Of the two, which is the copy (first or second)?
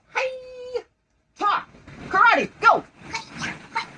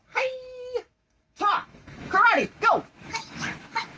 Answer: second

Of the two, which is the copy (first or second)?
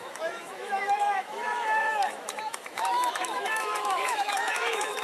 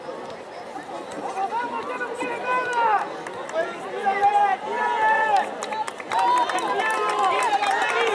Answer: first